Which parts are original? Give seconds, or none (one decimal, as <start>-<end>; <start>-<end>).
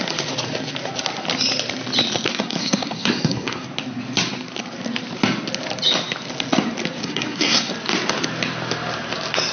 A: 0.0-2.3; 3.7-7.0; 7.7-9.5